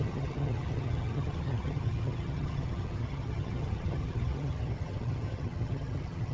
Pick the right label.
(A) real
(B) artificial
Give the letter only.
B